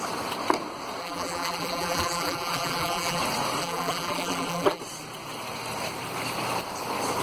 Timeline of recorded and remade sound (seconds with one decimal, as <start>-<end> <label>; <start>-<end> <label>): 0.0-1.0 recorded; 1.0-3.2 remade; 3.2-3.6 recorded; 3.6-4.8 remade; 4.8-7.2 recorded